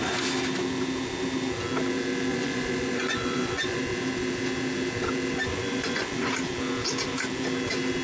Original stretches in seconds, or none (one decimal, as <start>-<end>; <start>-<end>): 0.0-2.3; 3.8-5.5; 6.3-8.0